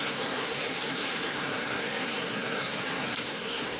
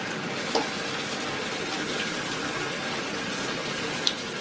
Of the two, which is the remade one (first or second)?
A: first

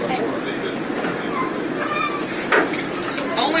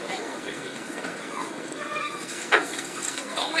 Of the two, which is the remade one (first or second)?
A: second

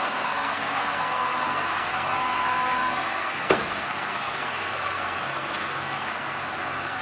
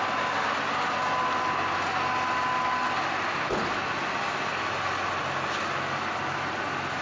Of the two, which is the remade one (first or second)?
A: first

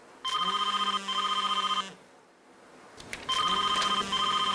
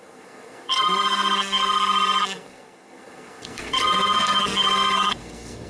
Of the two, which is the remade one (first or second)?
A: second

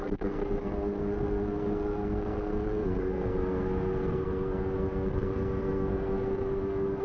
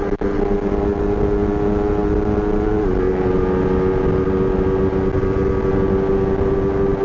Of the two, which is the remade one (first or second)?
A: first